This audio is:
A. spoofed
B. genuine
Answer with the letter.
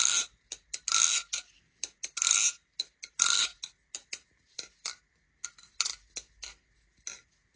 B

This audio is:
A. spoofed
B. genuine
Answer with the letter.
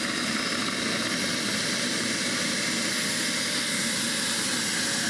B